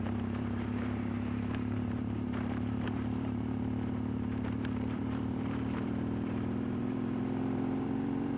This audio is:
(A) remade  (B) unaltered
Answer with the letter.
A